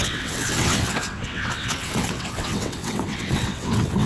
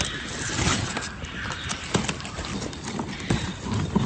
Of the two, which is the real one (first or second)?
second